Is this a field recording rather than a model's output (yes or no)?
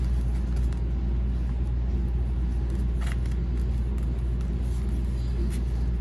yes